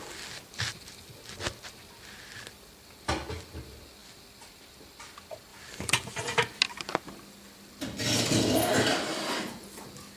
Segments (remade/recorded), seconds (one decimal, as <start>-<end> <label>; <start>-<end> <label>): 0.0-5.5 recorded; 5.5-6.6 remade; 6.6-10.2 recorded